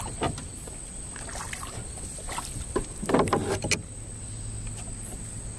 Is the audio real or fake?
real